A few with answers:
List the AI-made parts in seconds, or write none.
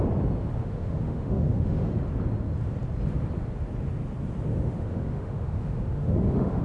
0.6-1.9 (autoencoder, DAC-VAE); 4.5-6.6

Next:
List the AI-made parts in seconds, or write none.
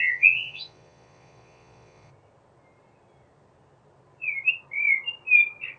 0.0-2.1 (vocoder, Vocos)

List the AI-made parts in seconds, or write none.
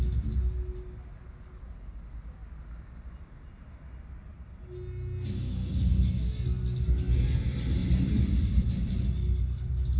7.8-8.9 (vocoder, BigVGAN v2)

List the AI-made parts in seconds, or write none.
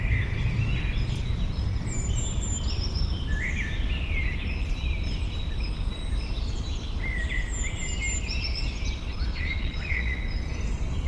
9.3-10.2 (vocoder, Vocos)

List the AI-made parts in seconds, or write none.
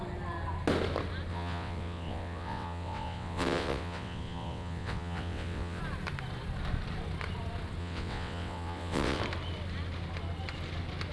1.3-5.8 (vocoder, WaveNeXt); 7.8-9.2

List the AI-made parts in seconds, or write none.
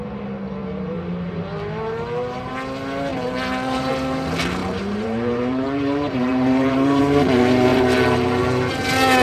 0.6-2.5 (vocoder, BigVGAN v2); 3.1-3.9; 4.6-7.0; 7.7-8.4